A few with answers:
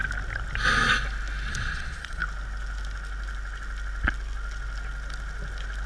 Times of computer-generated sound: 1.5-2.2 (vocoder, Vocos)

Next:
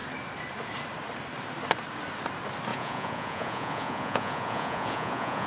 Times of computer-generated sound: 2.7-5.5 (vocoder, Vocos)

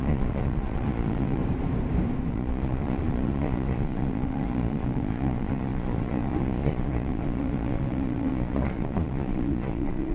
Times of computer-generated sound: 0.0-1.4 (vocoder, Vocos); 2.3-10.1

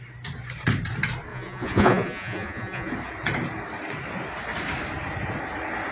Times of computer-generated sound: 1.3-2.9 (vocoder, Vocos)